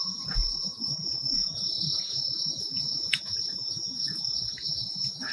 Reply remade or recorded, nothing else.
remade